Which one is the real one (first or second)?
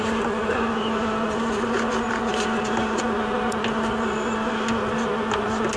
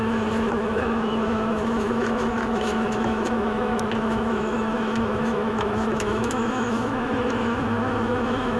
first